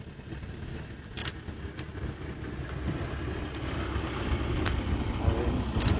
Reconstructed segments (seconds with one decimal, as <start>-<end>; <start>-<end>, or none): none